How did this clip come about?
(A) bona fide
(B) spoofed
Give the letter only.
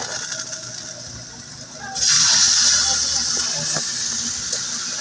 A